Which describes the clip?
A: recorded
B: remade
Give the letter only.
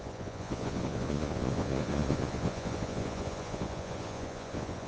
B